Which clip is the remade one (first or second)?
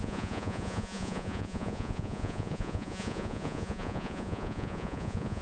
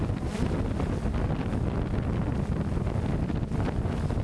first